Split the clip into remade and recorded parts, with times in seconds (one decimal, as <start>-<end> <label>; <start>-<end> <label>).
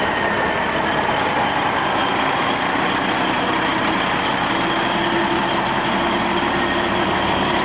0.0-7.6 recorded